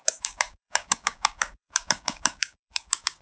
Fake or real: fake